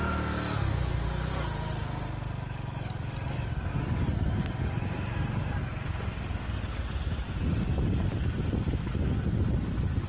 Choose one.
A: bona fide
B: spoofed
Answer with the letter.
A